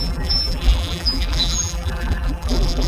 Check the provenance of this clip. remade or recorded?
remade